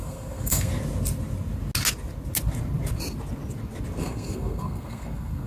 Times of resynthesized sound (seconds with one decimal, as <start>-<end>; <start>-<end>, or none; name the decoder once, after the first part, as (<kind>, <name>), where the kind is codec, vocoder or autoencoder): 0.0-0.7 (codec, SNAC); 4.0-5.5

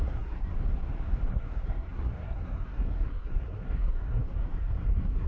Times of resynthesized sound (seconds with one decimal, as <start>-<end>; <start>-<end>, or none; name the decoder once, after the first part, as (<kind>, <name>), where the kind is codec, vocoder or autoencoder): 0.0-0.5 (codec, SNAC); 1.3-5.3

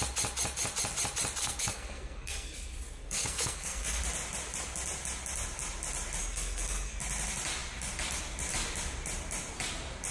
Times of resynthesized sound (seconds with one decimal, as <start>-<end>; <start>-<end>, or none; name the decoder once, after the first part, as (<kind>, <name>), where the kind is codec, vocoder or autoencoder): 1.4-4.0 (codec, SNAC); 6.2-7.0